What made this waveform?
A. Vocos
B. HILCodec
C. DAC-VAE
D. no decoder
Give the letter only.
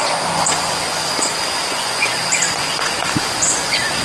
A